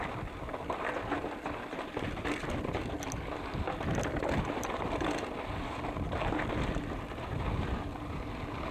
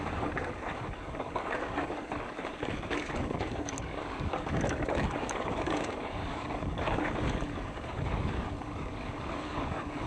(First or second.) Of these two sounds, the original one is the first